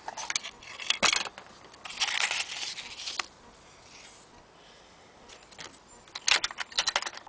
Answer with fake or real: real